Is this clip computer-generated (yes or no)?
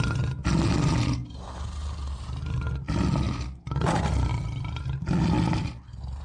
no